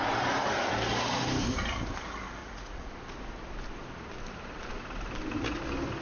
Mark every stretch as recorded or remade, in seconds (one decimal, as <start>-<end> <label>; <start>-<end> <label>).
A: 0.0-2.4 recorded; 2.4-2.9 remade; 2.9-6.0 recorded